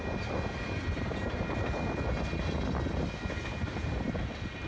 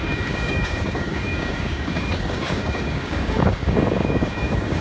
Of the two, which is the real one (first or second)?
first